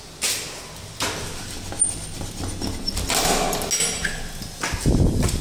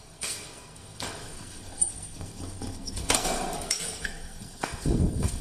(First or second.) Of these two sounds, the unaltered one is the first